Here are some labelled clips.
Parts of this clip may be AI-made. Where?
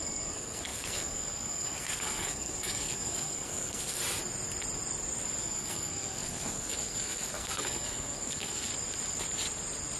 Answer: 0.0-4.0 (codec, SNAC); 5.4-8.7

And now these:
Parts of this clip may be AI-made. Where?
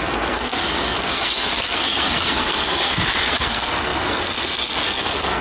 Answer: 0.0-5.4 (codec, SNAC)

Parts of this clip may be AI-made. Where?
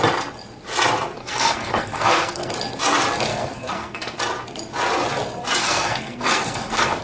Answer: 1.2-2.5 (codec, SNAC); 3.3-4.2; 5.6-7.0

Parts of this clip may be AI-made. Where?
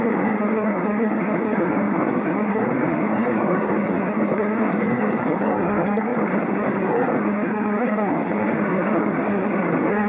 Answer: 0.0-10.1 (codec, SNAC)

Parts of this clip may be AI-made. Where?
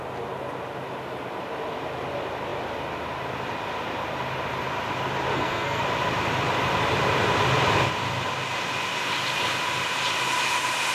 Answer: 5.3-5.8 (codec, SNAC)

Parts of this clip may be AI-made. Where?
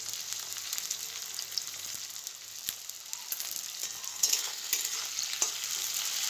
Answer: 4.1-4.7 (codec, SNAC)